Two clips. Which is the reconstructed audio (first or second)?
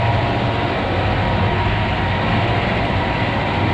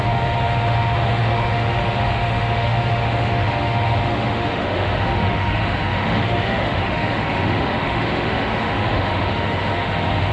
second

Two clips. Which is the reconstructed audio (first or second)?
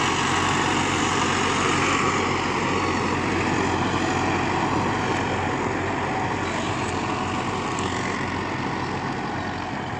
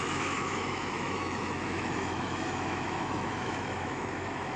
second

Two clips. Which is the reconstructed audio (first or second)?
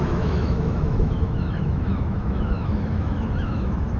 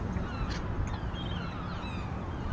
first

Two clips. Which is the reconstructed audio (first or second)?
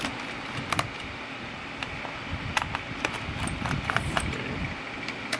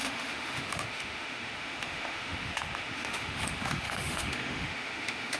second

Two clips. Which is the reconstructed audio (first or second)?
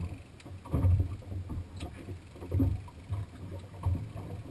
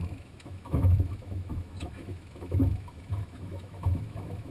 second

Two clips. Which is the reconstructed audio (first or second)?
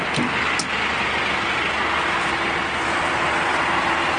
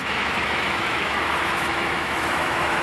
second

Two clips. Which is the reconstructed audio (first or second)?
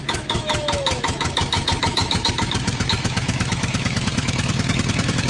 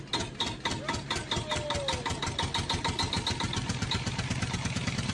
first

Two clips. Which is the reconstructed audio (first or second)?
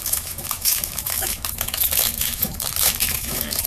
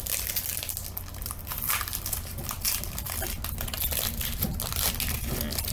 first